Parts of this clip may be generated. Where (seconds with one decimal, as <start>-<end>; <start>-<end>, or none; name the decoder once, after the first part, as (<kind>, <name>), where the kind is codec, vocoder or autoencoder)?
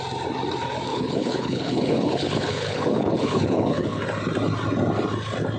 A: 0.9-4.0 (codec, HILCodec)